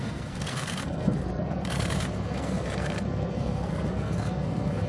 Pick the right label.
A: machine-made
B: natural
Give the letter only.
A